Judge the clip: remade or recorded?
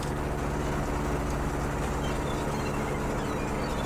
recorded